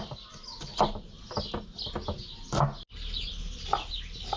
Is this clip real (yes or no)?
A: yes